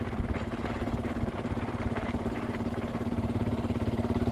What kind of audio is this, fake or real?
fake